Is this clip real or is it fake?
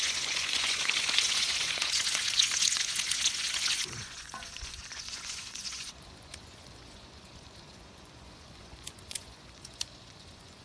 fake